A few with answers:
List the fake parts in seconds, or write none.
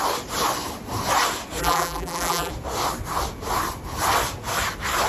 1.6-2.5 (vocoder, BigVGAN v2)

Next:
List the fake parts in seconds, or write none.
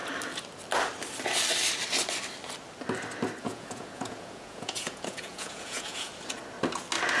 3.4-6.1 (vocoder, Vocos)